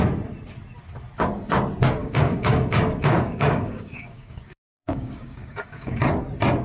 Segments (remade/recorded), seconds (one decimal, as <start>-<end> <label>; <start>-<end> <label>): 0.0-2.0 recorded; 2.0-6.0 remade; 6.0-6.6 recorded